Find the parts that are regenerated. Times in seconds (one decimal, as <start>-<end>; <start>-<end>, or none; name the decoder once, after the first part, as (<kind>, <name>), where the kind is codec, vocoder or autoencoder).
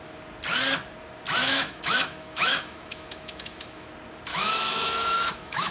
1.4-3.9 (autoencoder, DAC-VAE); 4.3-5.7